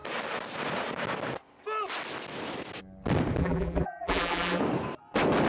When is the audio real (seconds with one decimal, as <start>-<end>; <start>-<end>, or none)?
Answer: 0.0-3.4; 4.6-5.5